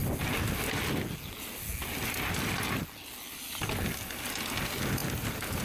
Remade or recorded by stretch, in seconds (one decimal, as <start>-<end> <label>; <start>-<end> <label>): 0.0-5.6 recorded